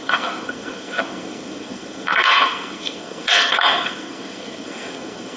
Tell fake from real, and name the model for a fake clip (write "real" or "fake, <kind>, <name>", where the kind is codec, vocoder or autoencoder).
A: fake, codec, SNAC